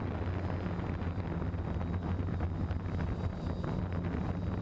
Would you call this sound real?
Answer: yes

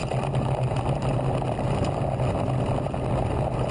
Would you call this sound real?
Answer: yes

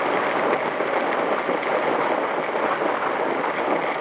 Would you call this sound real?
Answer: yes